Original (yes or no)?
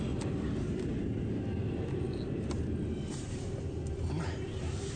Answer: yes